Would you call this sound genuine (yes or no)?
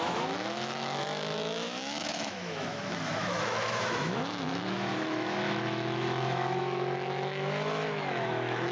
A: no